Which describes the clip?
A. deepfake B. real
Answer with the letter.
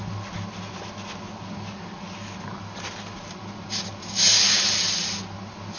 B